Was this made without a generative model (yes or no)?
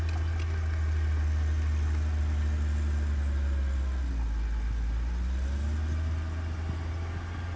yes